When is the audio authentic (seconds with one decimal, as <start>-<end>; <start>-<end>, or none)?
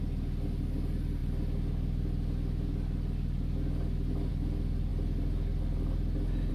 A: 0.0-6.5